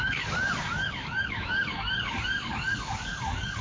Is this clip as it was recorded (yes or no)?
no